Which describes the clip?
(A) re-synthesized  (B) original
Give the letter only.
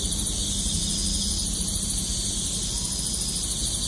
B